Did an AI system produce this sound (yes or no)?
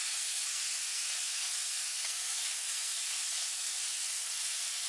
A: yes